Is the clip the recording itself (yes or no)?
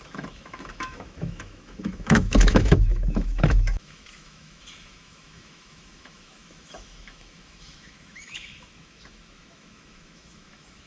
no